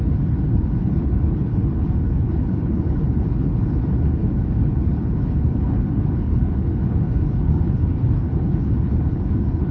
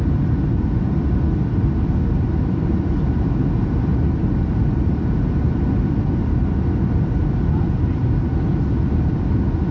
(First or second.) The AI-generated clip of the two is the first